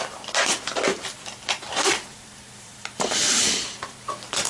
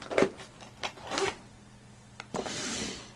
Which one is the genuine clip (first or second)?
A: second